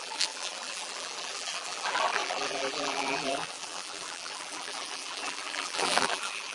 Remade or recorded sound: remade